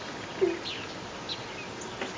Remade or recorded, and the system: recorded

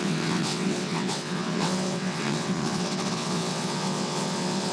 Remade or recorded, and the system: remade, vocoder, WaveNeXt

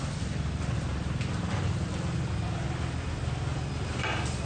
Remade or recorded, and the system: recorded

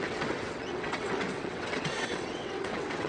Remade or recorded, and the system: remade, vocoder, WaveNeXt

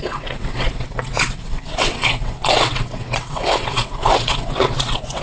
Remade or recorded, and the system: remade, vocoder, WaveNeXt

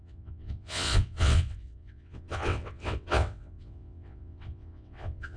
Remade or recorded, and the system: remade, vocoder, WaveNeXt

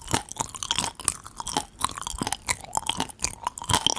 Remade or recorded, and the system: recorded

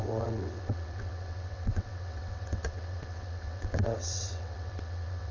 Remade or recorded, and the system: remade, vocoder, WaveNeXt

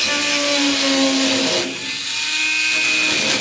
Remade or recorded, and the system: recorded